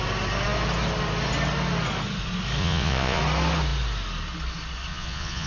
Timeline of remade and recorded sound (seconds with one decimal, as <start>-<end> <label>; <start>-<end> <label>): 0.0-2.6 recorded; 2.6-3.2 remade; 3.2-4.9 recorded; 4.9-5.5 remade